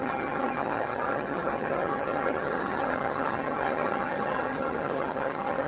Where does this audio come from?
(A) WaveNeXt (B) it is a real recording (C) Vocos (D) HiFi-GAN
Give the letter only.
D